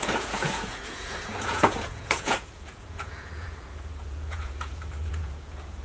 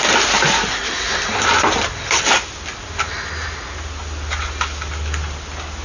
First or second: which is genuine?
second